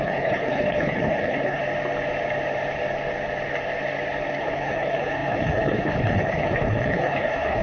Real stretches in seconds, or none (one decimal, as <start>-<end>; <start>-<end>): 1.6-4.4